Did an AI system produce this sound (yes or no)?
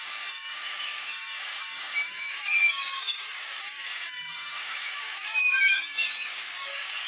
yes